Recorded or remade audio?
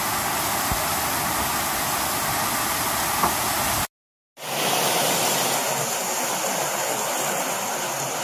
recorded